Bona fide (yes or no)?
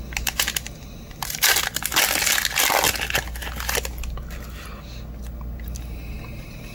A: yes